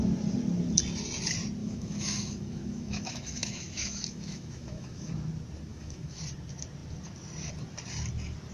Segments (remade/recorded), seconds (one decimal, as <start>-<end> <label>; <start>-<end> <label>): 0.0-1.6 recorded; 1.6-5.1 remade; 5.1-5.7 recorded; 5.7-6.2 remade; 6.2-8.5 recorded